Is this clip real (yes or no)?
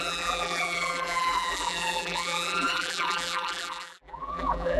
no